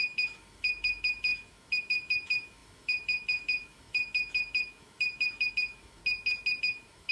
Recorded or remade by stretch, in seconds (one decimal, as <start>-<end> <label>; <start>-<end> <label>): 0.0-6.0 remade; 6.0-6.6 recorded; 6.6-7.1 remade